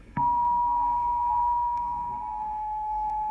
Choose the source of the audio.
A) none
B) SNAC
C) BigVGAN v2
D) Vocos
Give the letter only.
B